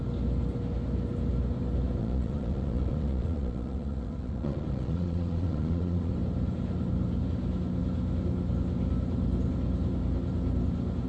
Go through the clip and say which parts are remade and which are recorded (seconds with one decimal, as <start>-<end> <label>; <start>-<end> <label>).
0.0-2.0 recorded; 2.0-6.1 remade; 6.1-11.1 recorded